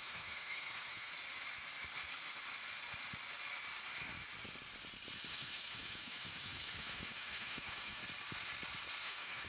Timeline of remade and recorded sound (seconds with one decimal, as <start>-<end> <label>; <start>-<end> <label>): 0.0-1.1 remade; 1.1-5.3 recorded; 5.3-8.0 remade; 8.0-9.0 recorded; 9.0-9.5 remade